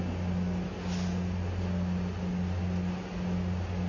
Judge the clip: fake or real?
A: real